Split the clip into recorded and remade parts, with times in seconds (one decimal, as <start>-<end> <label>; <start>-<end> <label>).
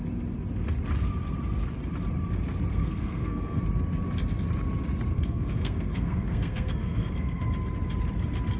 0.0-2.7 recorded; 2.7-3.6 remade; 3.6-5.1 recorded; 5.1-7.4 remade; 7.4-8.6 recorded